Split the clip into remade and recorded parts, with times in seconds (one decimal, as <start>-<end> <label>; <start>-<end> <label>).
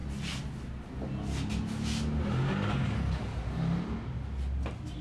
0.0-2.3 recorded; 2.3-3.3 remade; 3.3-5.0 recorded